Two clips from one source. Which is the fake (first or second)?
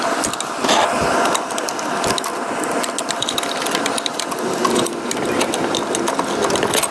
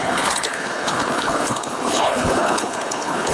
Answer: second